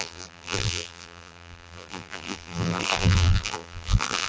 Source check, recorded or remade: remade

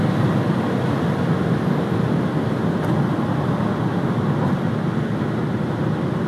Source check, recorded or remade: recorded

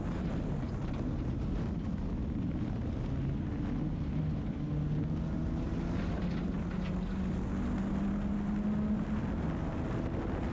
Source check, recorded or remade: recorded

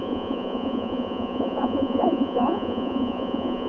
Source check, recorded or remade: remade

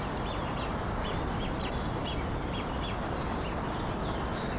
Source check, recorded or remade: recorded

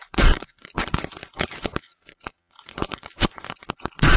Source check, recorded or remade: remade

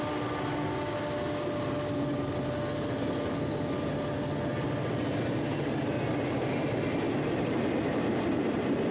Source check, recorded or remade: recorded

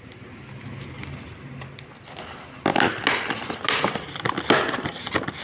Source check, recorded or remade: recorded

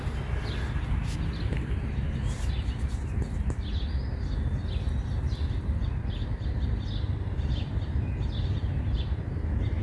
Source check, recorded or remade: recorded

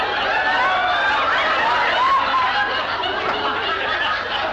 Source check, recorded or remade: recorded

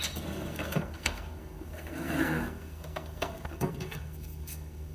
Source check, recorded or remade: remade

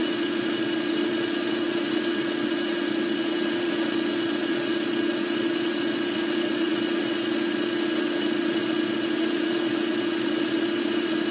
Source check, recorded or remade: remade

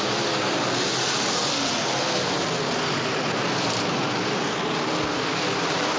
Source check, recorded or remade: recorded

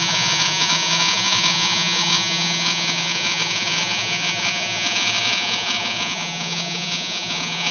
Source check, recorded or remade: remade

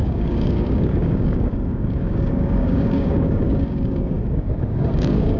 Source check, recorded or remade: remade